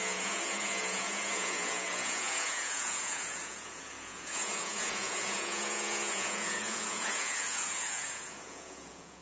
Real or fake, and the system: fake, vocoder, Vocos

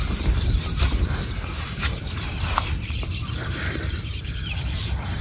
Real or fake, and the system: fake, vocoder, BigVGAN v2